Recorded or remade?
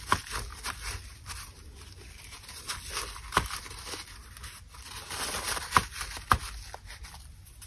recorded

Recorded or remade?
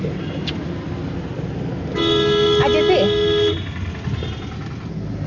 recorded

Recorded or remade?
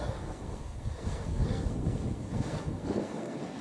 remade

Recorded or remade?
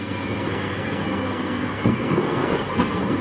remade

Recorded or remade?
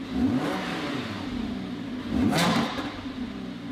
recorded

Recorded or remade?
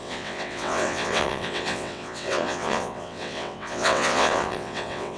remade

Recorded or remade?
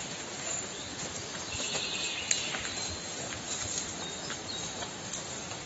remade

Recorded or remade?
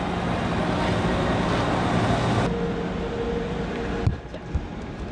recorded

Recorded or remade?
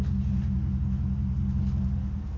recorded